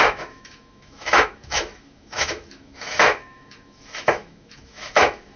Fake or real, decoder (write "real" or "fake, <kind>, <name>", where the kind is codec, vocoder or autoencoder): fake, autoencoder, DAC-VAE